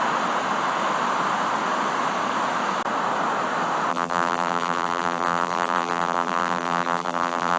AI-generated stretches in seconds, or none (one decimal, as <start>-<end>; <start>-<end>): 3.9-7.6